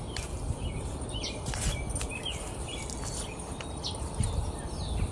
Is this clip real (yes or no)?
no